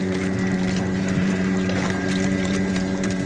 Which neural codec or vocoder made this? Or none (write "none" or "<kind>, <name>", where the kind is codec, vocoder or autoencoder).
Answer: vocoder, BigVGAN v2